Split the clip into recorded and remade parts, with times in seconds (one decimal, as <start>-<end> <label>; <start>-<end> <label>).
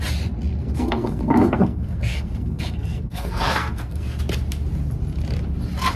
0.0-0.6 recorded; 0.6-4.2 remade; 4.2-6.0 recorded